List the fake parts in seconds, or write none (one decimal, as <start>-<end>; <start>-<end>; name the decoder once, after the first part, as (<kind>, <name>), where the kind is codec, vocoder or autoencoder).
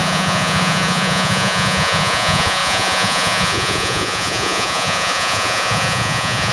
0.0-6.5 (vocoder, Vocos)